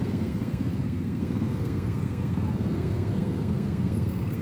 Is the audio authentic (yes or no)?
no